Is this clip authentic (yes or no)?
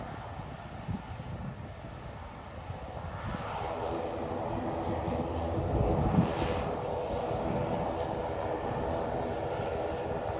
yes